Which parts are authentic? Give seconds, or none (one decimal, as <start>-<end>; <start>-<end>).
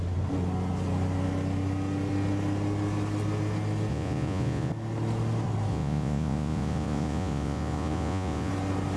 0.0-3.9; 4.7-5.7; 8.5-9.0